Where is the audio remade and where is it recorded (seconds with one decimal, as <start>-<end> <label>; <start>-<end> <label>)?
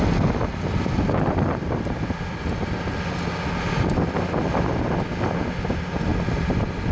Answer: 0.0-6.9 recorded